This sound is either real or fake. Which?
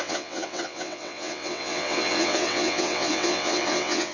fake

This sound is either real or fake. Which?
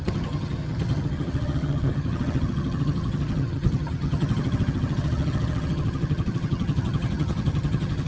fake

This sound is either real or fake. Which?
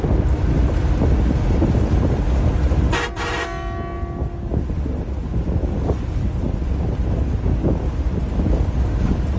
real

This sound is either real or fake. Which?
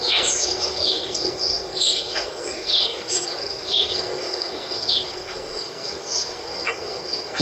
fake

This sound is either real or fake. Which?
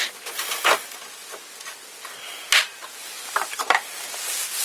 real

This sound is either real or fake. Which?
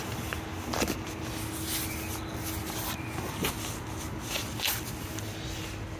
real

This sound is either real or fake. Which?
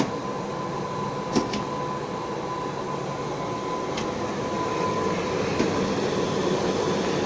real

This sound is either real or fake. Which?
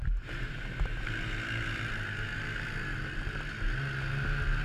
real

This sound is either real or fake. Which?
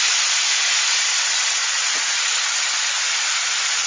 real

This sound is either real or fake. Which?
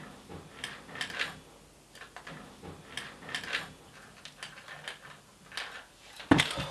real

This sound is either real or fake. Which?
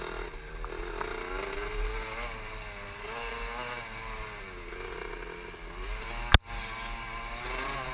real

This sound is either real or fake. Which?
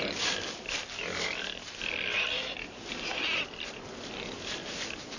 real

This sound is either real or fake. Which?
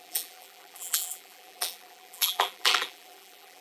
fake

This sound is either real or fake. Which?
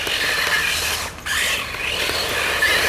real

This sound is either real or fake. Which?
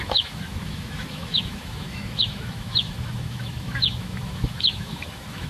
fake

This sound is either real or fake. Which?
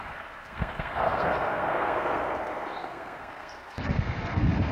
fake